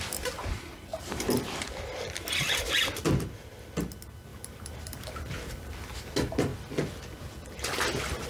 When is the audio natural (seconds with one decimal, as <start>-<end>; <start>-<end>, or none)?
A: 0.0-0.9; 1.4-4.3; 5.7-8.3